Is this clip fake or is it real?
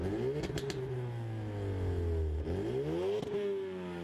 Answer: real